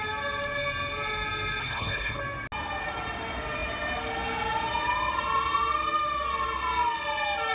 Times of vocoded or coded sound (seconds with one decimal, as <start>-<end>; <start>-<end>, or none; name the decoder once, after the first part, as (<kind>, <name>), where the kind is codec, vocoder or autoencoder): 1.6-2.2 (codec, HILCodec)